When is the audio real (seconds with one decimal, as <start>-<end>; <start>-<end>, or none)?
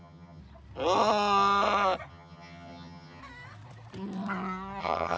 0.4-2.1; 3.2-4.8